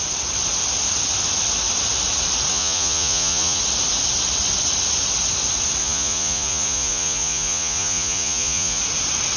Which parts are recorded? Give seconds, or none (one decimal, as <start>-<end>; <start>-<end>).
0.0-2.5; 3.6-5.8; 8.8-9.4